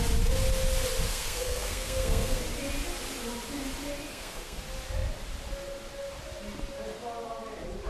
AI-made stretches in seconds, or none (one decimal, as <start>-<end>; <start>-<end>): 1.1-2.4; 4.1-4.6